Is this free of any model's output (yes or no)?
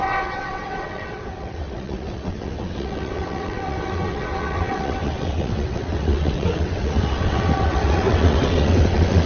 no